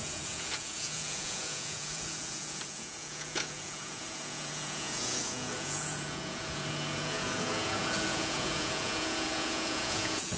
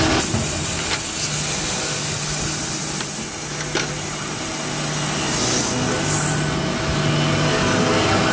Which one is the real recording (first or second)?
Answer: second